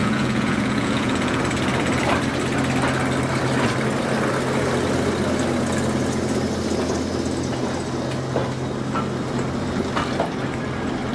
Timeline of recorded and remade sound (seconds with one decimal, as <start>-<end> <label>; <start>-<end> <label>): 0.0-1.4 remade; 1.4-11.1 recorded